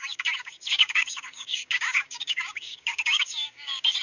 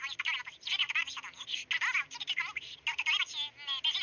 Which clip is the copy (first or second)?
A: first